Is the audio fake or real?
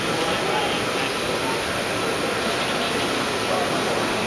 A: real